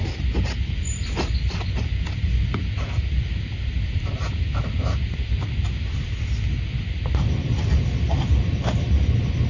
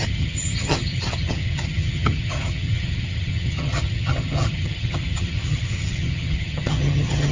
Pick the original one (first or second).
first